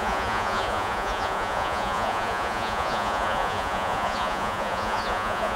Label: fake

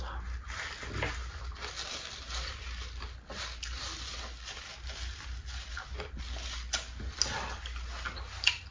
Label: real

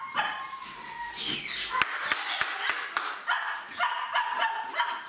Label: real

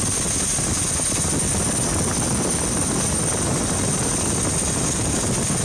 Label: real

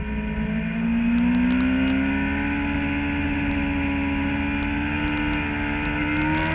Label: real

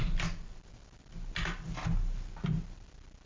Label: real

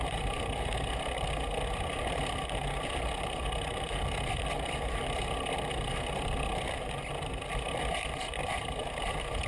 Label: real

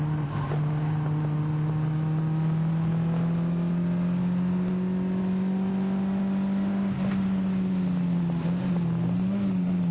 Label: real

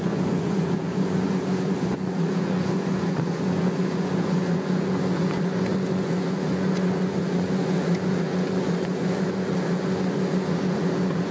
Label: fake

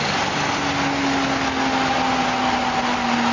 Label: real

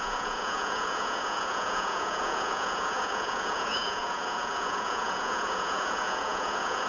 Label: fake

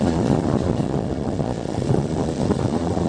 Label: fake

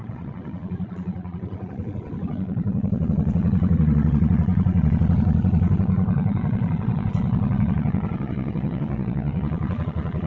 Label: fake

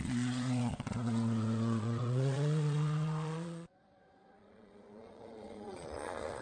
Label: fake